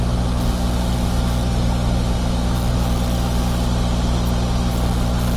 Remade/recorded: recorded